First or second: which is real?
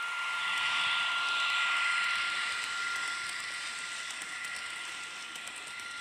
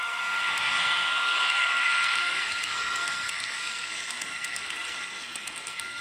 first